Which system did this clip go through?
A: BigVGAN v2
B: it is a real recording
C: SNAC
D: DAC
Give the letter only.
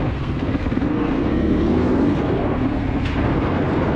C